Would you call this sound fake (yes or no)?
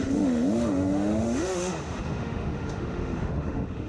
yes